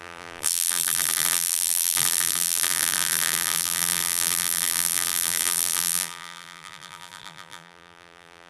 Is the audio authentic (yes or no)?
no